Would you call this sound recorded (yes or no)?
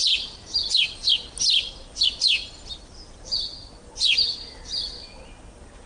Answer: yes